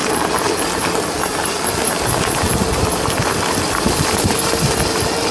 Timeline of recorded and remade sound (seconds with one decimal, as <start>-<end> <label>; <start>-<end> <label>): 0.0-2.8 remade; 2.8-5.3 recorded